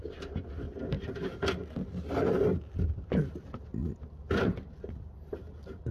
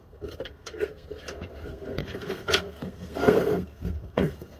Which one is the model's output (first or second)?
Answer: second